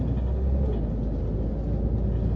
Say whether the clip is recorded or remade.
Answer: recorded